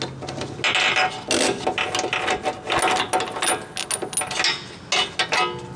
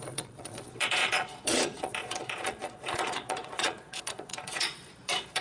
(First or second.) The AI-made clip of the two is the second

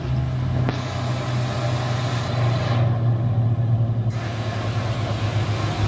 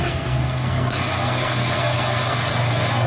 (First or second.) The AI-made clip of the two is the second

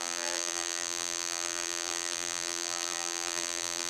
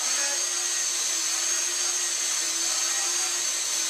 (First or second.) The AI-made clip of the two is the first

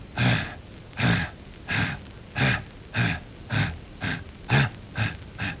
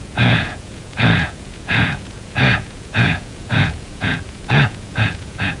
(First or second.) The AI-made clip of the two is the second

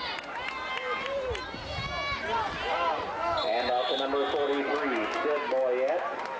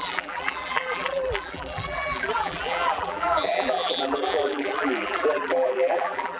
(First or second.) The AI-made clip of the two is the second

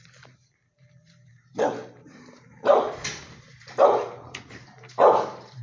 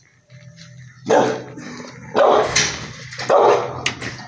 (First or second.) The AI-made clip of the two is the first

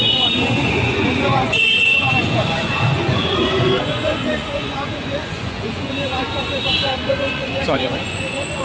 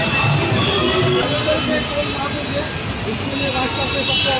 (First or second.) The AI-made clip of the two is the first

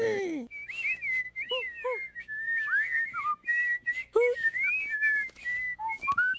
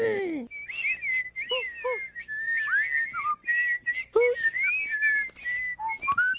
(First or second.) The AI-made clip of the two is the first